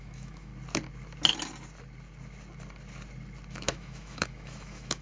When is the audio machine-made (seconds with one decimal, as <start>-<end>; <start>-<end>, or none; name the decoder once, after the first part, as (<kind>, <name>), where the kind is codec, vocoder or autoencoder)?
0.0-0.5 (autoencoder, DAC-VAE); 3.5-5.0